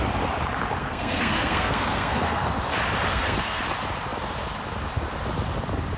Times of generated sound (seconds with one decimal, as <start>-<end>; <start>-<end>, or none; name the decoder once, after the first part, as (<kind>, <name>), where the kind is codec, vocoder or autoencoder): 0.8-2.5 (codec, SNAC); 3.1-3.6